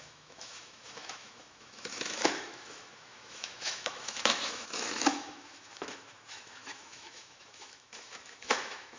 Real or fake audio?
fake